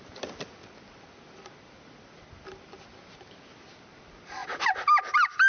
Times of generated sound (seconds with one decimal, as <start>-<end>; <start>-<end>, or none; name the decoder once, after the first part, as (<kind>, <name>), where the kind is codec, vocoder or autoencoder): none